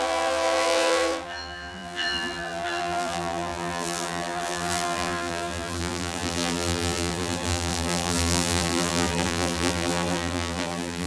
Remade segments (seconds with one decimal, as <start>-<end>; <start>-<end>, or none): 0.0-11.1